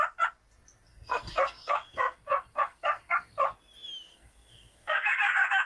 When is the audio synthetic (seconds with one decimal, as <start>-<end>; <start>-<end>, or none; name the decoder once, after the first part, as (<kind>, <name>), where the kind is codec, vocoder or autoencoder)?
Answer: 0.9-3.1 (codec, SNAC); 4.1-5.7